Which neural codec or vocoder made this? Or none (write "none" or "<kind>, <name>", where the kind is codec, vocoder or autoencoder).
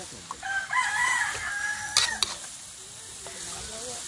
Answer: none